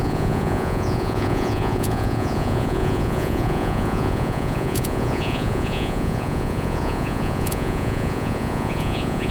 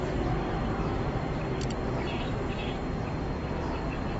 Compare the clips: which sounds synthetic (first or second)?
first